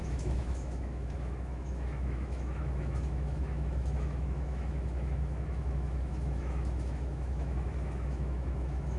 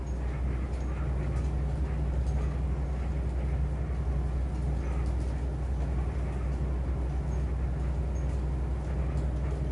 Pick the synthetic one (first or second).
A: first